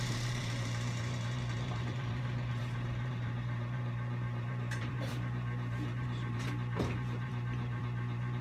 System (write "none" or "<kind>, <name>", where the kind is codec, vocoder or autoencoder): vocoder, BigVGAN v2